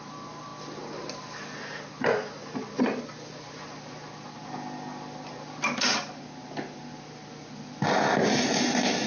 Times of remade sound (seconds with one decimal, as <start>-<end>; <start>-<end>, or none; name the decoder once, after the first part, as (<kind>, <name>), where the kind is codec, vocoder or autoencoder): none